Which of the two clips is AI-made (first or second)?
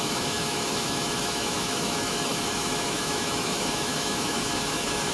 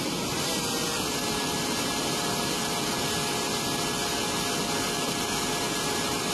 first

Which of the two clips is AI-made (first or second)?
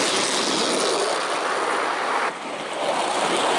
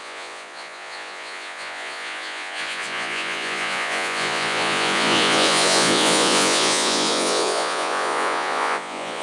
second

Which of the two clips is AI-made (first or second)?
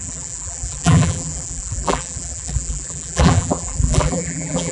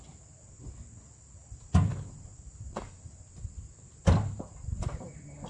first